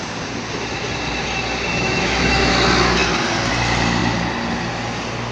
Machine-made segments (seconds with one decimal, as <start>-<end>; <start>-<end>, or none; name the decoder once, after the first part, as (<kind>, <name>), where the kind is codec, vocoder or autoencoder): 1.7-2.5 (autoencoder, DAC-VAE)